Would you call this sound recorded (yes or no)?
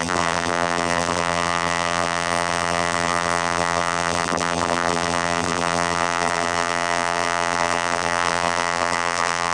no